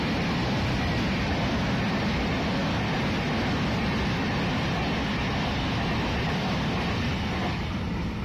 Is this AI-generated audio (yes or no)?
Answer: no